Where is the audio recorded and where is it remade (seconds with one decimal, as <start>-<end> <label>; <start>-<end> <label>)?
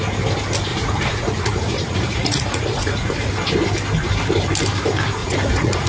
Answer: 0.0-0.7 recorded; 0.7-3.3 remade; 3.3-5.2 recorded; 5.2-5.9 remade